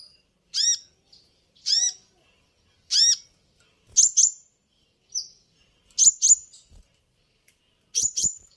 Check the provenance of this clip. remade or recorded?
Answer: recorded